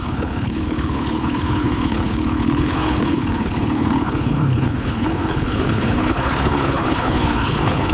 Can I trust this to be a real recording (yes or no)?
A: no